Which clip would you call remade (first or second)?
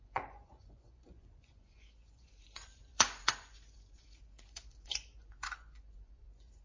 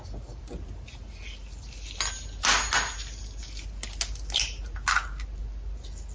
first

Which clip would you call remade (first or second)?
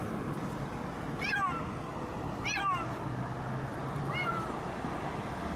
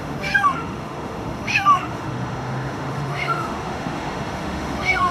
second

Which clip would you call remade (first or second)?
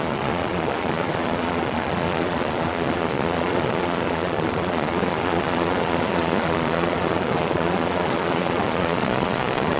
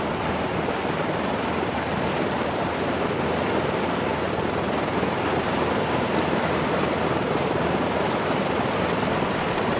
first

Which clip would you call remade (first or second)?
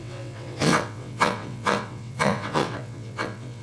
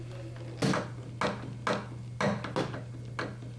first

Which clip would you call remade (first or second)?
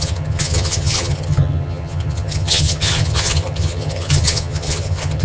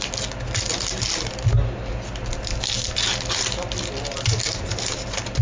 first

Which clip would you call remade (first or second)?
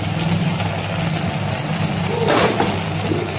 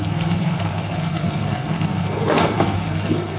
second